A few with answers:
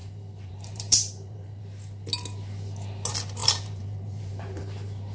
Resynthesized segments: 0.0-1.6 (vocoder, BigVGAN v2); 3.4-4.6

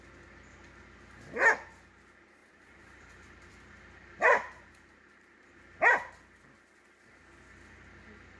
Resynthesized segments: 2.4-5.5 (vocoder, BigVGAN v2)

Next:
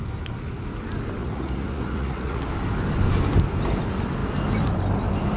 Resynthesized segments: 1.2-2.4 (vocoder, Vocos)

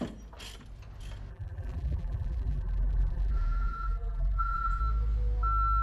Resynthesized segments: 1.3-4.8 (vocoder, BigVGAN v2)

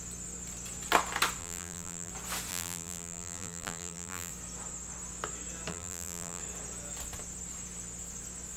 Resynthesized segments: 1.4-2.1 (vocoder, BigVGAN v2); 2.5-4.3; 5.7-6.4

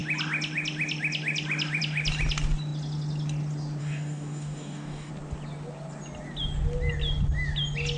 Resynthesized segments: 3.8-5.1 (codec, DAC)